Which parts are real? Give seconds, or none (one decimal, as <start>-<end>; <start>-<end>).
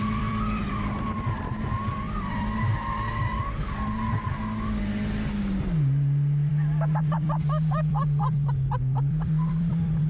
2.7-6.5